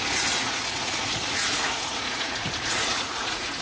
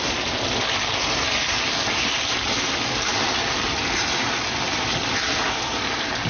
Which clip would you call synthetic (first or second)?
first